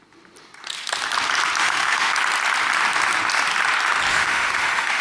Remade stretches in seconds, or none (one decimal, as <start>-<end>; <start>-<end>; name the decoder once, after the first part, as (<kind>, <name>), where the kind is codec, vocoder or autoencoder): 1.6-2.1 (autoencoder, DAC-VAE); 4.1-5.0